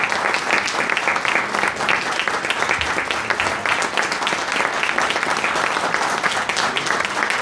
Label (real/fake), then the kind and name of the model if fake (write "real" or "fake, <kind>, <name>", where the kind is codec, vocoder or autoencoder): real